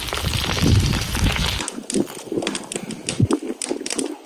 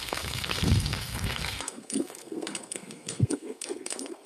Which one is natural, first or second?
first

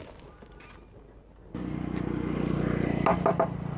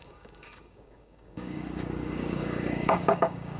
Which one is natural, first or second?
first